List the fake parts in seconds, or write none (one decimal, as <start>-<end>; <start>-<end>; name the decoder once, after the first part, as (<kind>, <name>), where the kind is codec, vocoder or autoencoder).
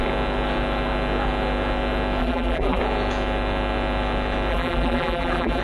2.2-2.8 (vocoder, BigVGAN v2); 4.5-5.6